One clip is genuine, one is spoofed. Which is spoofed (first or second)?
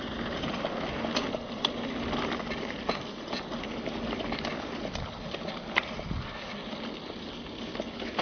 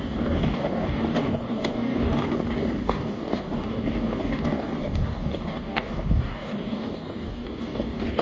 second